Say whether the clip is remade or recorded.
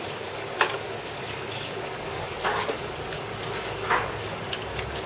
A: remade